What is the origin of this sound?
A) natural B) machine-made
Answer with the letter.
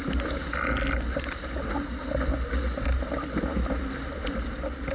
A